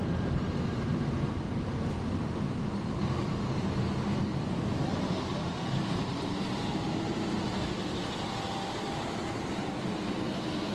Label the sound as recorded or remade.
recorded